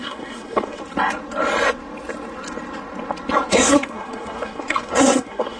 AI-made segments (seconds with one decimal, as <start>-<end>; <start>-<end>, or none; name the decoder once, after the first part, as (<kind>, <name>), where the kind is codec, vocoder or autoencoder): 0.0-0.8 (codec, SNAC); 3.5-5.6